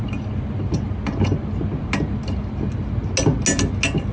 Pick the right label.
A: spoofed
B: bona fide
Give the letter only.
B